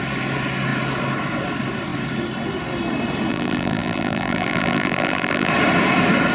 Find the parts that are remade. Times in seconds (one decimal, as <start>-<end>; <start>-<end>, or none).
3.3-5.5